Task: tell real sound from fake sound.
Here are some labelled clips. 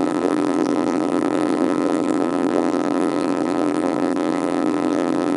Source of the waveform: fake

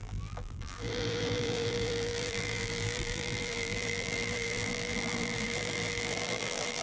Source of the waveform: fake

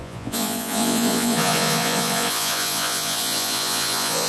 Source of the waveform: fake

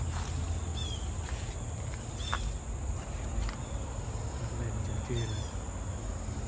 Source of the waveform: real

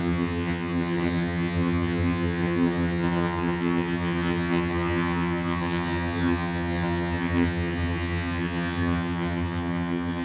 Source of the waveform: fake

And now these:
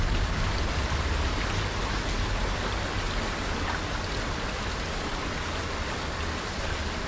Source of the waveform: real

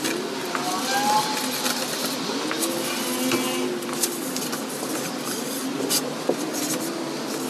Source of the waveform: real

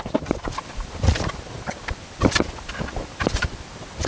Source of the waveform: fake